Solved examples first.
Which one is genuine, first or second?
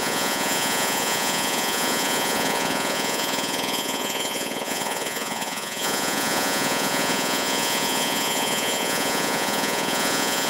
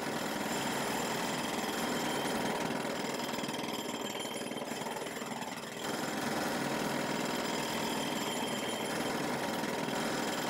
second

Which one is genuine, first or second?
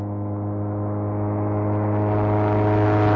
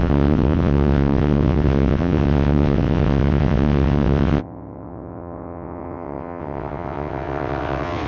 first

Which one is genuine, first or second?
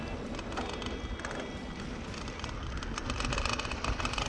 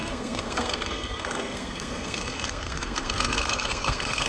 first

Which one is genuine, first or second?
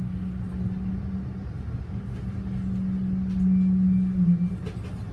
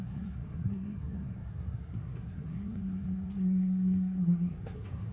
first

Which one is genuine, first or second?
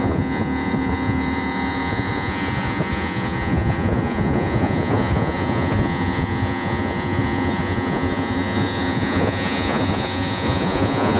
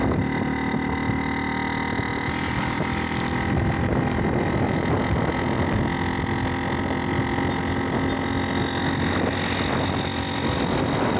second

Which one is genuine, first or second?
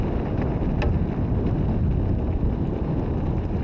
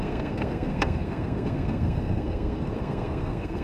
first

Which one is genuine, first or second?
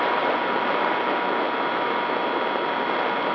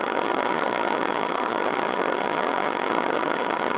first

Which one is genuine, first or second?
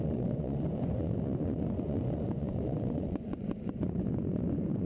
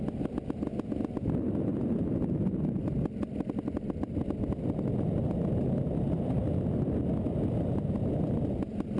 second